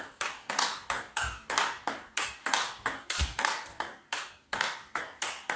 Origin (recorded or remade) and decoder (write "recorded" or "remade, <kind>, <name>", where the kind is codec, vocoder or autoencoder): remade, codec, DAC